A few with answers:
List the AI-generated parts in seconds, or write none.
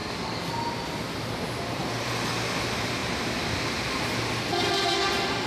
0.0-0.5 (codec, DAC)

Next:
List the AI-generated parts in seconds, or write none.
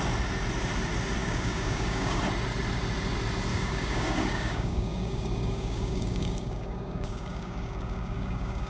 1.2-2.2 (codec, DAC); 3.5-8.7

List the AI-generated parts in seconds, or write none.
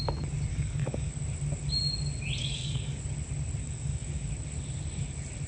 0.5-1.1 (codec, DAC); 2.4-3.0; 3.6-4.3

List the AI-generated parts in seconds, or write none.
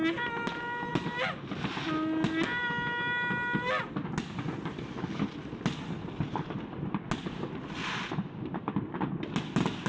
none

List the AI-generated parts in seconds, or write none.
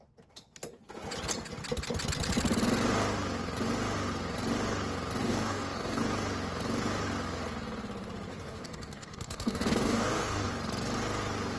5.2-6.0 (codec, DAC); 8.3-10.5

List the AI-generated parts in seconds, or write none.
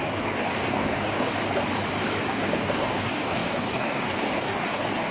0.0-1.3 (codec, DAC); 2.3-5.1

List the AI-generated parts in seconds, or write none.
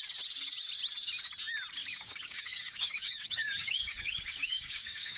1.8-5.2 (codec, DAC)